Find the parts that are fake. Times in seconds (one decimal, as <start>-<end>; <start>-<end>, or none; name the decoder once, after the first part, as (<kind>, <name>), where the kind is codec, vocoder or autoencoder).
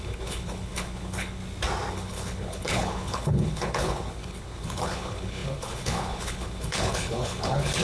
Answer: 0.0-1.4 (codec, HILCodec); 1.9-7.8